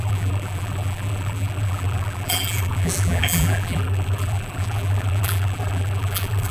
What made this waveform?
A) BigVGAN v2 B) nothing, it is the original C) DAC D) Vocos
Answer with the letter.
A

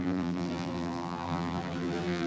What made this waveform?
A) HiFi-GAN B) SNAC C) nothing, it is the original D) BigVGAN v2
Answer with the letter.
D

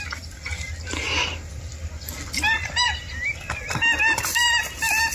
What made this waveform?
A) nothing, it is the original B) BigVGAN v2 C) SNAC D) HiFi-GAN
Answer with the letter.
A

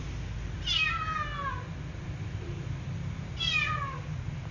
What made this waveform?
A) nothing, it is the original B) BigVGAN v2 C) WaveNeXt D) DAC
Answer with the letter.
A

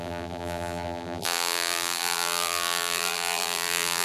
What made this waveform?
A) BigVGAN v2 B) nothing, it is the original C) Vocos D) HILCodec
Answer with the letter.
A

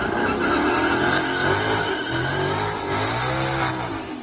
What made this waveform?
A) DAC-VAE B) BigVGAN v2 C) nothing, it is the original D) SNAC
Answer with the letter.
C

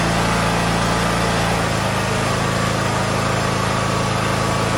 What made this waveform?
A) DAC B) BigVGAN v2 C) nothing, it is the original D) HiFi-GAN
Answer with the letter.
C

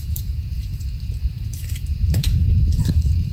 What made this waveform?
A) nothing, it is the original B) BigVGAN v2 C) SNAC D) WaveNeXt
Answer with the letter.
B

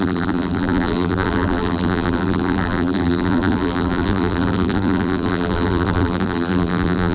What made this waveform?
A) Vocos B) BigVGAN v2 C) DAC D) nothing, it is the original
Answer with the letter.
B